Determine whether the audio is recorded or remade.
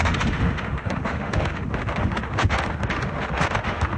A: remade